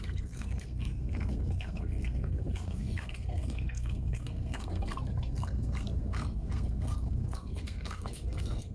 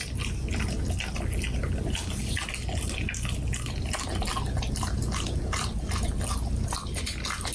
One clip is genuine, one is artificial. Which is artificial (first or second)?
first